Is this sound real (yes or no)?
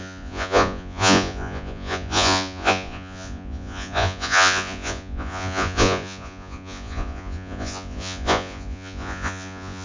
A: no